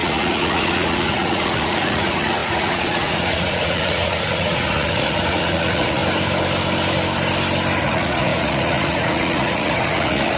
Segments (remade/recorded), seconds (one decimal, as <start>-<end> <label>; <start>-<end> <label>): 0.0-6.0 remade; 6.0-7.8 recorded; 7.8-10.4 remade

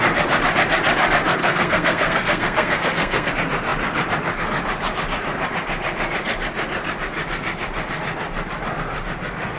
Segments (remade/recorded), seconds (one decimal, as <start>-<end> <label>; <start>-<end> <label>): 0.0-1.4 recorded; 1.4-3.3 remade; 3.3-9.6 recorded

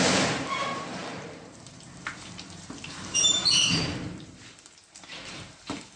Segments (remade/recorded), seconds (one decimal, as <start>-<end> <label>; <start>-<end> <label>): 0.0-6.0 remade

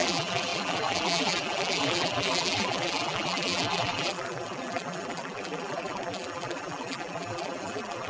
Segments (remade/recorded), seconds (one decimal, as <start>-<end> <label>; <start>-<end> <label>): 0.0-8.1 remade

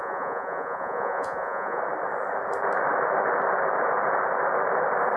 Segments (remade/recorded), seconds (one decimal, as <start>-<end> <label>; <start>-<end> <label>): 0.0-1.8 remade; 1.8-5.2 recorded

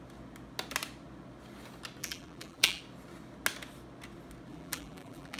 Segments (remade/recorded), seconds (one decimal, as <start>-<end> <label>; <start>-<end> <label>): 0.0-2.0 recorded; 2.0-2.8 remade; 2.8-4.5 recorded; 4.5-5.4 remade

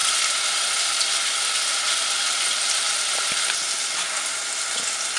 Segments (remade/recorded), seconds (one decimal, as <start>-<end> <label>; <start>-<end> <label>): 0.0-5.2 recorded

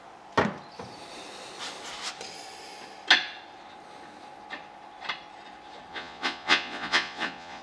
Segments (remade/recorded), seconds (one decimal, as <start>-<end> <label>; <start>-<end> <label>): 0.0-5.9 recorded; 5.9-7.6 remade